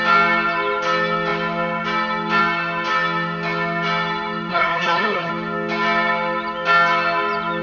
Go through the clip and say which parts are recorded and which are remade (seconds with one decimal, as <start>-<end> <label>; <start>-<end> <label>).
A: 0.0-4.5 recorded; 4.5-5.3 remade; 5.3-7.6 recorded